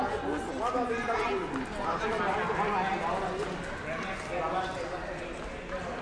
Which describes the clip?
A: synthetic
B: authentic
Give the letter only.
B